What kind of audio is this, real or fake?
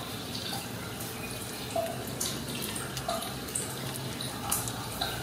real